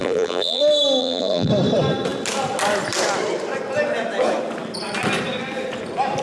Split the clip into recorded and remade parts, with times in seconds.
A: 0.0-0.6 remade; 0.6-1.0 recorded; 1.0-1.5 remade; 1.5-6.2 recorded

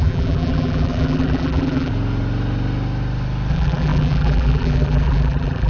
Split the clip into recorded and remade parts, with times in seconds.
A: 0.0-1.9 remade; 1.9-3.5 recorded; 3.5-5.7 remade